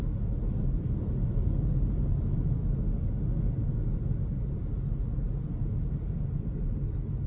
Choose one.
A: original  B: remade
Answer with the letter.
A